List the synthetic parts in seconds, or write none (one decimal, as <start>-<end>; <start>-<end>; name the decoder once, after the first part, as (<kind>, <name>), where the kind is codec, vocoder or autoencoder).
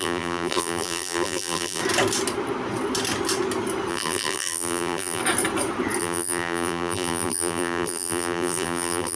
0.0-1.8 (vocoder, BigVGAN v2); 3.9-5.2; 6.0-9.2